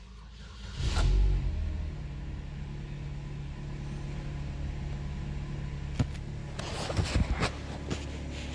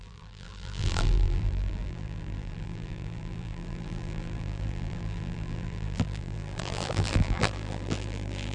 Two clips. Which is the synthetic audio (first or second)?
second